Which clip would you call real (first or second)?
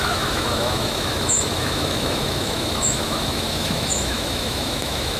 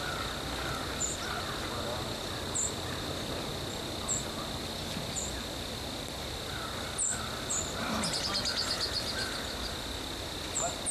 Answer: second